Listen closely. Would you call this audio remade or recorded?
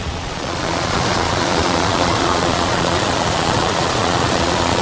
remade